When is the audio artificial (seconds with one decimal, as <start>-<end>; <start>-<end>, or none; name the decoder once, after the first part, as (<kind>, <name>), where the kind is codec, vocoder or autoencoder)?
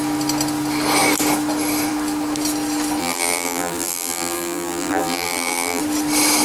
3.0-5.8 (vocoder, BigVGAN v2)